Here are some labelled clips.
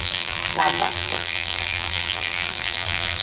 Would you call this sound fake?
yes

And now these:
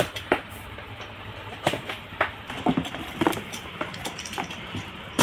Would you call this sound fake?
yes